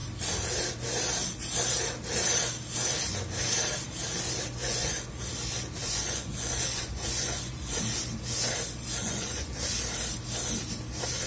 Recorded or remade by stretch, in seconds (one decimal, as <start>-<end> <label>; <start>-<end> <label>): 0.0-4.6 recorded; 4.6-5.2 remade; 5.2-5.8 recorded; 5.8-7.8 remade; 7.8-9.0 recorded; 9.0-9.6 remade; 9.6-11.3 recorded